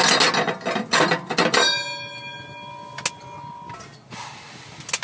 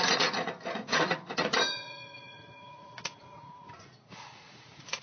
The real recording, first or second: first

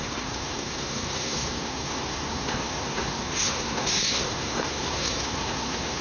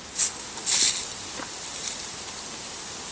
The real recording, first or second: second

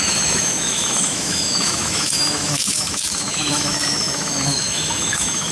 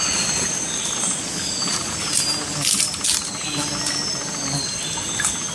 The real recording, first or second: second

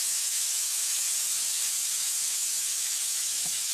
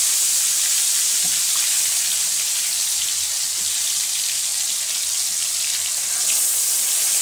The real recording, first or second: second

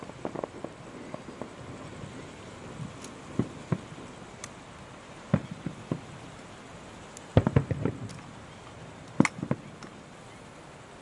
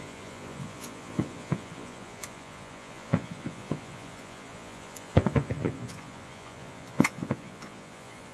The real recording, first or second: first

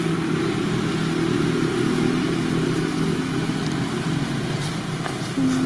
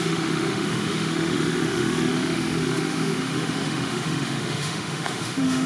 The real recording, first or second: first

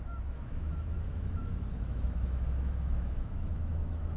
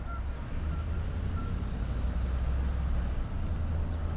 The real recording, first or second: second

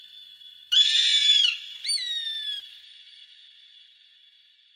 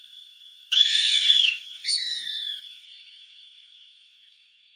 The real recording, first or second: first